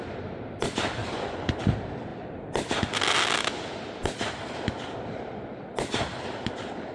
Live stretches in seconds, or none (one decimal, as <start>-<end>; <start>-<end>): 0.0-1.0; 1.6-6.9